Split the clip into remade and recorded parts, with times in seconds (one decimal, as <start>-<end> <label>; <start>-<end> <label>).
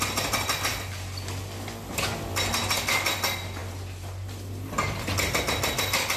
0.0-6.2 recorded